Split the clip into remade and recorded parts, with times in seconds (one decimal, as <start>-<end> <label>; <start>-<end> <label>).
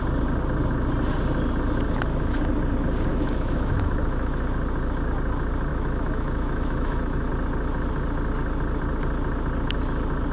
0.0-3.1 recorded; 3.1-4.4 remade; 4.4-5.7 recorded; 5.7-7.3 remade; 7.3-10.3 recorded